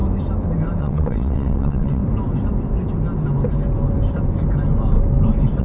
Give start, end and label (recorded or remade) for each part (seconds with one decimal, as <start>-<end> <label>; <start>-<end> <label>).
0.0-0.8 recorded; 0.8-2.0 remade; 2.0-5.6 recorded

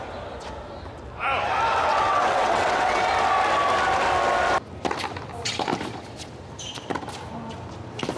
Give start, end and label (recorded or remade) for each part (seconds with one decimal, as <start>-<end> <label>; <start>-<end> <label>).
0.0-1.9 recorded; 1.9-3.0 remade; 3.0-8.2 recorded

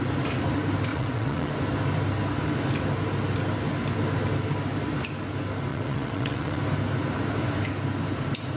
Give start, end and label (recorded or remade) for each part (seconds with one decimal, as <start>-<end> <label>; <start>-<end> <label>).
0.0-0.9 recorded; 0.9-1.5 remade; 1.5-5.7 recorded; 5.7-6.6 remade; 6.6-8.6 recorded

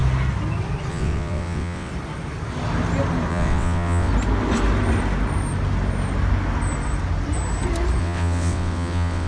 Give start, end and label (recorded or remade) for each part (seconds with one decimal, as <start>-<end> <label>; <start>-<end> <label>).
0.0-0.9 recorded; 0.9-1.9 remade; 1.9-3.3 recorded; 3.3-4.1 remade; 4.1-8.0 recorded; 8.0-9.3 remade

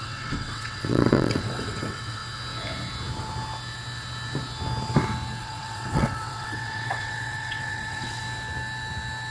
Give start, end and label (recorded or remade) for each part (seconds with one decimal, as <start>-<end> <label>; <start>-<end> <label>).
0.0-2.2 remade; 2.2-5.4 recorded; 5.4-8.2 remade; 8.2-9.3 recorded

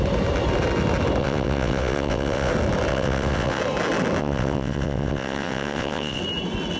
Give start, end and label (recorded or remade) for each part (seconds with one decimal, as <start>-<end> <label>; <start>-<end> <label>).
0.0-1.2 recorded; 1.2-2.5 remade; 2.5-2.9 recorded; 2.9-3.6 remade; 3.6-4.2 recorded; 4.2-6.2 remade; 6.2-6.8 recorded

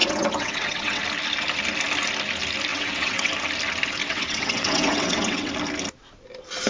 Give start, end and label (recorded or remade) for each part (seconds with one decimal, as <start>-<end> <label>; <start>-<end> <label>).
0.0-1.0 remade; 1.0-2.7 recorded; 2.7-3.3 remade; 3.3-4.0 recorded; 4.0-5.5 remade; 5.5-6.7 recorded

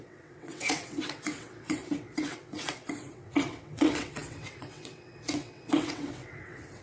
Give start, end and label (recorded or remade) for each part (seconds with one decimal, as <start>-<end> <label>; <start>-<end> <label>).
0.0-6.8 remade